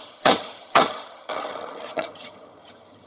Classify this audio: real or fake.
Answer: fake